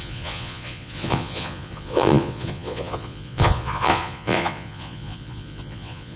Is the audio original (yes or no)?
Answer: no